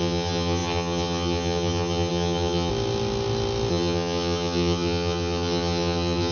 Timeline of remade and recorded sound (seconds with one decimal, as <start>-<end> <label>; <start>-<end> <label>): 0.0-2.7 remade; 2.7-3.7 recorded; 3.7-6.3 remade